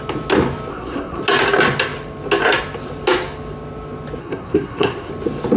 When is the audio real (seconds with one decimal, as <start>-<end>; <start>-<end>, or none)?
0.0-0.7; 1.2-4.2; 5.1-5.6